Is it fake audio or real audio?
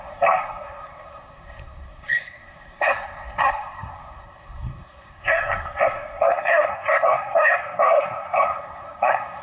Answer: fake